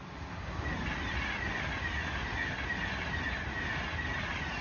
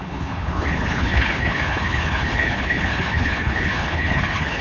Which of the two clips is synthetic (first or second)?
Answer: second